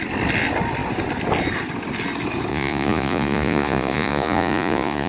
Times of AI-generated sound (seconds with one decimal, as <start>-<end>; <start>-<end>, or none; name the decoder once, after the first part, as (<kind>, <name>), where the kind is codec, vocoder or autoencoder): 2.5-5.1 (vocoder, Vocos)